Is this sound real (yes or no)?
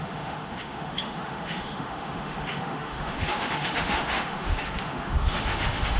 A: no